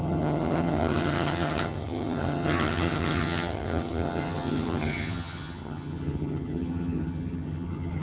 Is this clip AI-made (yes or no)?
yes